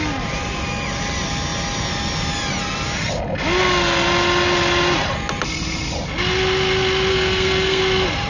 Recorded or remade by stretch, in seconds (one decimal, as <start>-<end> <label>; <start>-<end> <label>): 0.0-7.1 recorded; 7.1-7.8 remade; 7.8-8.3 recorded

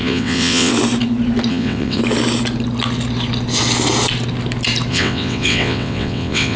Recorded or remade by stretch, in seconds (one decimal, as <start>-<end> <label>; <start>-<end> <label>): 0.0-0.7 remade; 0.7-1.5 recorded; 1.5-2.0 remade; 2.0-4.9 recorded; 4.9-6.6 remade